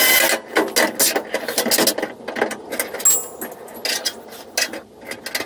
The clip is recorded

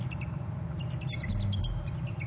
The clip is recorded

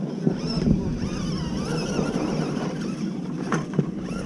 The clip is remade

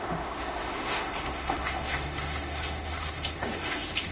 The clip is remade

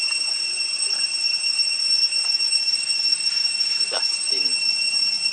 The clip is remade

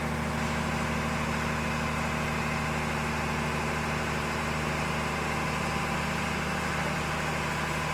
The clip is recorded